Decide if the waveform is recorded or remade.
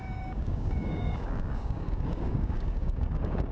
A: remade